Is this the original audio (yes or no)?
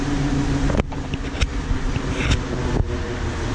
yes